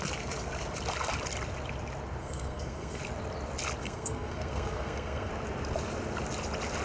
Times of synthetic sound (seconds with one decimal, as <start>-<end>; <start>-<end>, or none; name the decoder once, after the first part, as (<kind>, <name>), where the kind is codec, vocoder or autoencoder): 2.2-3.0 (codec, SNAC); 3.8-5.3

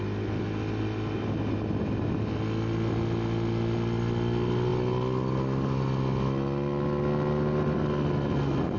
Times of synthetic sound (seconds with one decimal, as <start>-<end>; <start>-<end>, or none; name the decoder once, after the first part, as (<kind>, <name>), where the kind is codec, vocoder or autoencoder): none

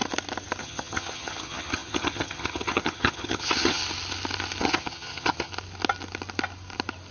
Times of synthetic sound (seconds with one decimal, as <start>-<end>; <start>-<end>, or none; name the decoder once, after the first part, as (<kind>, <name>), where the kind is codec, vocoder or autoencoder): 0.6-3.8 (vocoder, HiFi-GAN); 4.6-5.5

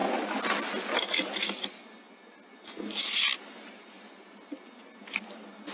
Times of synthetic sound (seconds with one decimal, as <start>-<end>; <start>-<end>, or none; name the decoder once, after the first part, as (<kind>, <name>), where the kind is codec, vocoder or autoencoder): none

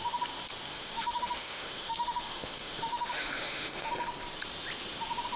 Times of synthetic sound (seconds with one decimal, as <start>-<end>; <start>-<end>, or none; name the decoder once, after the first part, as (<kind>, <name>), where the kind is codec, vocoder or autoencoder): 0.7-3.9 (autoencoder, DAC-VAE)

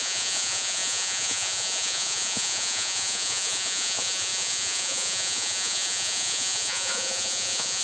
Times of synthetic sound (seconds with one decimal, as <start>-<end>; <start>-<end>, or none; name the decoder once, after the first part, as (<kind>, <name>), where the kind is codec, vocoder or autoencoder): 0.0-7.8 (vocoder, Vocos)

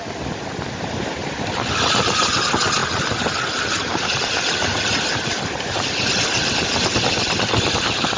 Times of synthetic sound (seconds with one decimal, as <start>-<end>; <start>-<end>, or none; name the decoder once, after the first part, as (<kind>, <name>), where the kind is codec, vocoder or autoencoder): none

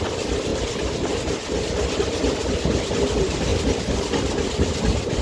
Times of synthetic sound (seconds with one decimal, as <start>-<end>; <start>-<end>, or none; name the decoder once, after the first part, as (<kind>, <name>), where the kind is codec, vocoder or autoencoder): 0.0-0.5 (vocoder, BigVGAN v2); 2.5-5.2